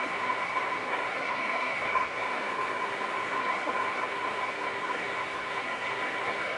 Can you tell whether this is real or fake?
fake